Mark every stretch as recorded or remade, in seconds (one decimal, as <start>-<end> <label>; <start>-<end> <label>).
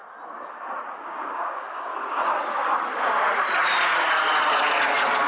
0.0-0.9 recorded; 0.9-1.9 remade; 1.9-5.3 recorded